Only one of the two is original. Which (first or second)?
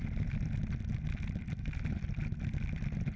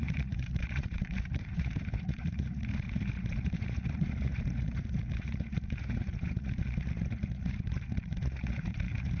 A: first